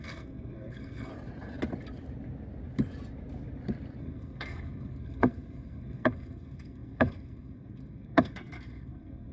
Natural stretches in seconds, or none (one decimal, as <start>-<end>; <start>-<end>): 1.1-4.0